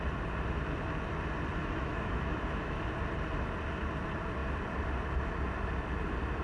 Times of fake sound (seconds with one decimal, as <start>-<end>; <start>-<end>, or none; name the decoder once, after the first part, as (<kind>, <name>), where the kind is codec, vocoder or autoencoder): 1.6-2.8 (autoencoder, DAC-VAE)